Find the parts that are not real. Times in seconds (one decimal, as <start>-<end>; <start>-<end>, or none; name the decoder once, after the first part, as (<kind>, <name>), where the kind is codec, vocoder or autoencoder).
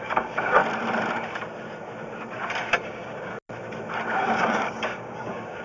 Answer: 0.0-0.6 (codec, DAC); 2.8-3.3; 4.2-5.6